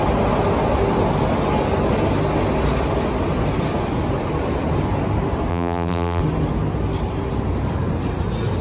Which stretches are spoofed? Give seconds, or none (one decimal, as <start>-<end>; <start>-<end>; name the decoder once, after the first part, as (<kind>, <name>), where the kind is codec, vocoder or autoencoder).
5.5-6.2 (vocoder, BigVGAN v2)